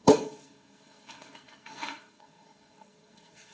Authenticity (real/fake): fake